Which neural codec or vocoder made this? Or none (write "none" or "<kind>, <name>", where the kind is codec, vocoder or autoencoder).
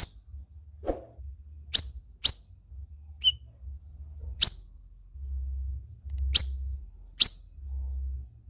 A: none